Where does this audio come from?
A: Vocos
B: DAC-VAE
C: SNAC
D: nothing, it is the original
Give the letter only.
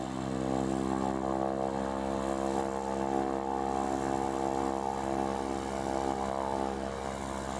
D